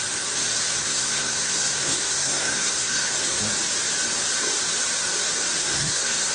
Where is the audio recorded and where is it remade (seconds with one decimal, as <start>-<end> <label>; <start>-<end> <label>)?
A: 0.0-0.8 recorded; 0.8-3.4 remade; 3.4-5.6 recorded; 5.6-6.3 remade